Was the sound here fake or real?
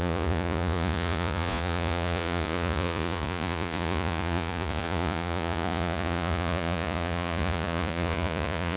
fake